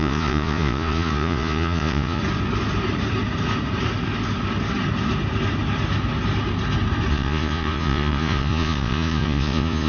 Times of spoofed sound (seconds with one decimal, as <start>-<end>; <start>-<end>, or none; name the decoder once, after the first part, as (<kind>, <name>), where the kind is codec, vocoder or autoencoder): 0.0-2.2 (vocoder, Vocos); 7.1-9.9